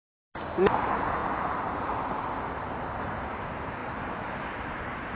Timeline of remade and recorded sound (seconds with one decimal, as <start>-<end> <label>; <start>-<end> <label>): 0.0-1.2 recorded; 1.2-3.0 remade; 3.0-3.8 recorded; 3.8-4.4 remade; 4.4-5.1 recorded